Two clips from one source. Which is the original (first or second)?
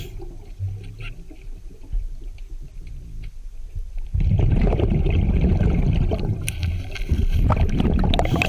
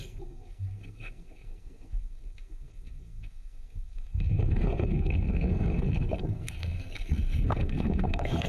first